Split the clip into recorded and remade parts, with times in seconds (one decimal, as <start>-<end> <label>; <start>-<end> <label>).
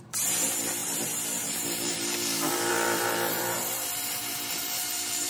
0.0-5.3 remade